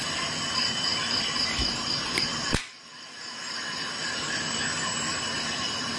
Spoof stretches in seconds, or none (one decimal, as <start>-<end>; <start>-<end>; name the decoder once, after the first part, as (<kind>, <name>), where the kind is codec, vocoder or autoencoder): none